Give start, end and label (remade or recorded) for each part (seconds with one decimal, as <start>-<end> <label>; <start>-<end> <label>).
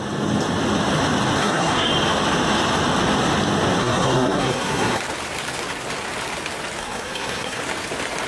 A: 0.0-1.4 recorded; 1.4-1.9 remade; 1.9-3.8 recorded; 3.8-5.0 remade; 5.0-6.8 recorded; 6.8-7.6 remade; 7.6-8.3 recorded